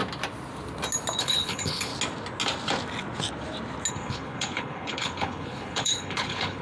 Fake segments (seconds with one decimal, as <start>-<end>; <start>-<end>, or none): 1.2-1.9; 3.9-6.6